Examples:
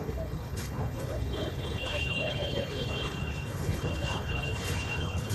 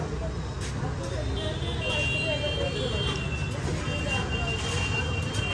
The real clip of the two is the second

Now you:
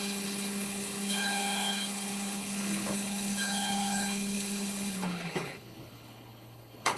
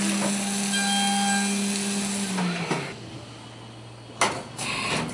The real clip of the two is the second